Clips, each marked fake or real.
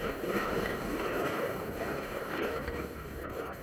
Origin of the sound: fake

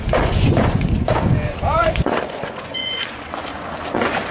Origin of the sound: fake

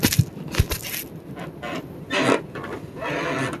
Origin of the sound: real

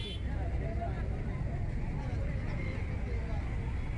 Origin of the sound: real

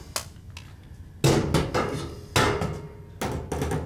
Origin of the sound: real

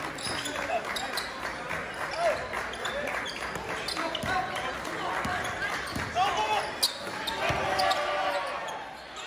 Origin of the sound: real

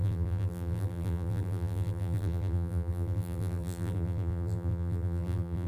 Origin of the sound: fake